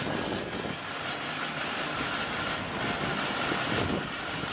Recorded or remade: recorded